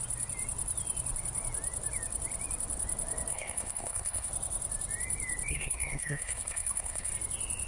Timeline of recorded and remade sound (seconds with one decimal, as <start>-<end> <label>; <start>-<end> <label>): 0.0-3.3 recorded; 3.3-4.3 remade; 4.3-5.5 recorded; 5.5-7.1 remade; 7.1-7.7 recorded